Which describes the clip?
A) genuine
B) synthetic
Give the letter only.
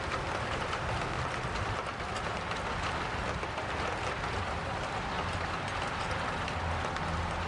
A